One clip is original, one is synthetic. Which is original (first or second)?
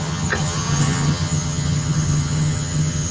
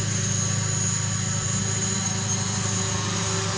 second